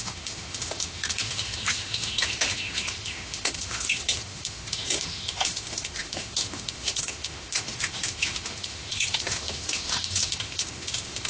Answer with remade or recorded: remade